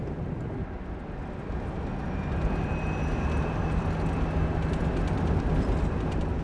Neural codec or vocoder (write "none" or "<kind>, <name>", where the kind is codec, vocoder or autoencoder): none